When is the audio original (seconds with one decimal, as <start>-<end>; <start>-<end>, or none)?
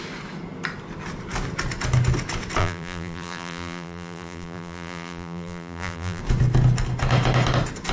0.0-2.6; 6.2-7.9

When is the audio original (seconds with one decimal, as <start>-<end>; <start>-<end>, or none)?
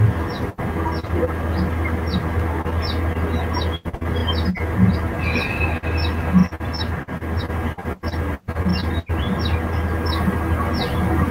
0.0-6.4; 7.4-8.7; 9.2-11.3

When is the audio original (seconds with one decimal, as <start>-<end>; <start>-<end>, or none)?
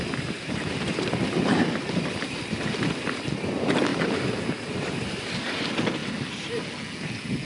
0.0-3.9; 5.1-7.4